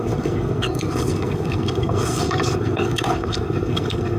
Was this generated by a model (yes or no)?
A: yes